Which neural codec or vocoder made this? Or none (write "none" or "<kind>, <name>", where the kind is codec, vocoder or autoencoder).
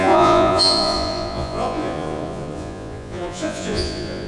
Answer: vocoder, Vocos